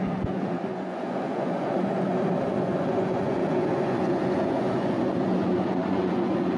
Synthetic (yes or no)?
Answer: yes